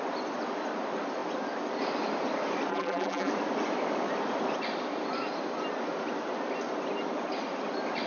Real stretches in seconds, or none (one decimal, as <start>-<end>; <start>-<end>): 0.0-2.7; 3.3-8.1